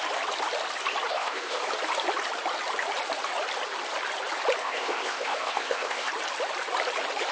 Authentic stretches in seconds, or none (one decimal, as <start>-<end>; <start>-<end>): 0.0-1.1; 1.6-4.6; 6.1-7.3

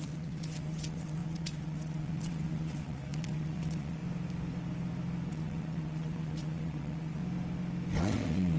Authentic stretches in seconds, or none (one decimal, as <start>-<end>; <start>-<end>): 4.0-5.3; 7.2-8.0

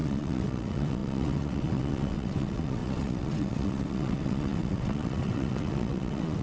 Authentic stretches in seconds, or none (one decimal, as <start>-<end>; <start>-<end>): none

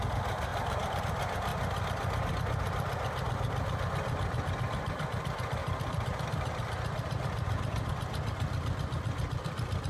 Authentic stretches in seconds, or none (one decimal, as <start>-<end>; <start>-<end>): 0.0-0.5; 1.0-5.6; 7.9-9.9

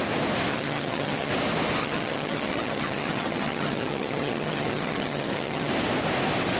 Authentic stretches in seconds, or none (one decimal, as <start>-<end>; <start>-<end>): 0.0-0.5; 1.3-1.8; 5.7-6.6

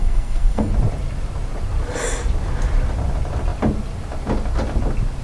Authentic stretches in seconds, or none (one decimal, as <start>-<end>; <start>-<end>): 0.7-5.2